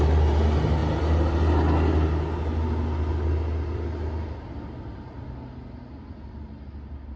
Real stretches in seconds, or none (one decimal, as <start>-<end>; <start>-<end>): 0.0-7.2

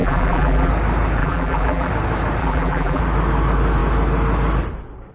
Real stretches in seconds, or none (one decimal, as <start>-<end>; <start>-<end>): 0.7-1.2; 1.9-2.4; 3.0-5.1

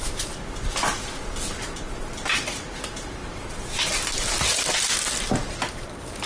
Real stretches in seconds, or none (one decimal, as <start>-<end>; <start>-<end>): 0.0-6.3

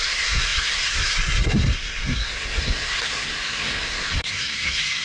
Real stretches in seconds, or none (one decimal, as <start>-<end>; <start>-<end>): none